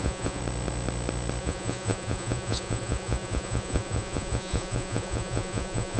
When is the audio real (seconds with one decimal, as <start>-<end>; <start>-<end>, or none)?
0.4-1.4